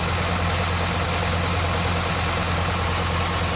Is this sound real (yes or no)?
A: yes